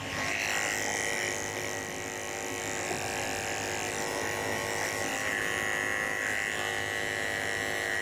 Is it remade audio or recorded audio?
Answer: recorded